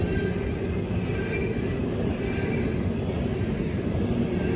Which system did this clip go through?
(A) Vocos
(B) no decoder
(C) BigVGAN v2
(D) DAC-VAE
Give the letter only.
B